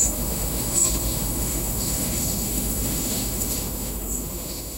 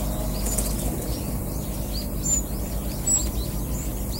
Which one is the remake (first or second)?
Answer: first